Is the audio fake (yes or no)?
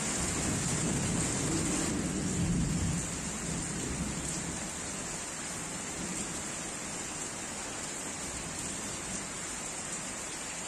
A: no